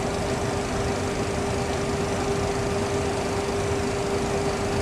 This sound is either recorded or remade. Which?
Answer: recorded